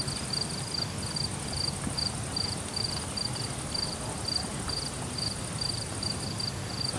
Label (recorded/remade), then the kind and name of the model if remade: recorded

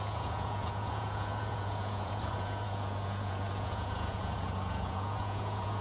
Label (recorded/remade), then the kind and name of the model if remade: remade, vocoder, Vocos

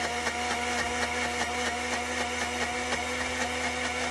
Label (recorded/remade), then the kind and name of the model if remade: recorded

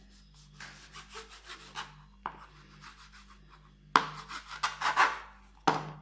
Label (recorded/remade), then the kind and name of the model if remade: recorded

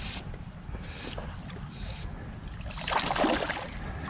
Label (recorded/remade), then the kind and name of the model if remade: recorded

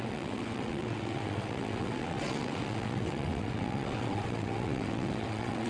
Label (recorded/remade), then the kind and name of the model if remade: remade, vocoder, WaveNeXt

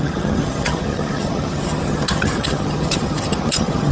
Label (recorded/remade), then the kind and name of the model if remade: remade, vocoder, HiFi-GAN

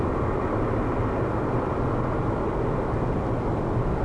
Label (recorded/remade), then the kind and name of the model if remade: recorded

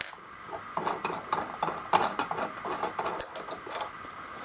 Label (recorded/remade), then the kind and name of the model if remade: recorded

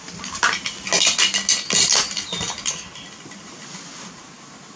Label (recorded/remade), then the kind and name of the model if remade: recorded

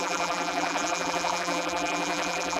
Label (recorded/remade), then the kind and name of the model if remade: remade, vocoder, BigVGAN v2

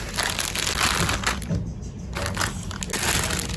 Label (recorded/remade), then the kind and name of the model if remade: recorded